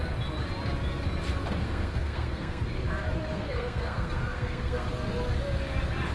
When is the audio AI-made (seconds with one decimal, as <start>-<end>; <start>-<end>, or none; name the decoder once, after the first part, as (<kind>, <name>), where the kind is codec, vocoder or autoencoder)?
1.6-2.6 (codec, SNAC); 3.3-4.9